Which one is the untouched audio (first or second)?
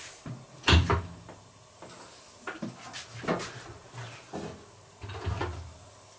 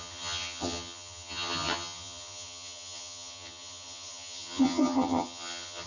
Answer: first